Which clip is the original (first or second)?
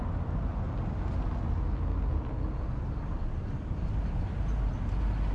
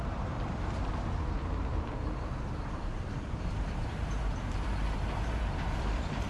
first